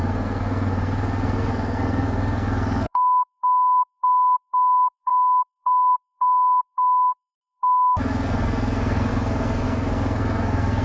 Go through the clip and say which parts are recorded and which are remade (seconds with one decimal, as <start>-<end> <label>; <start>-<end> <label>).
0.0-10.8 remade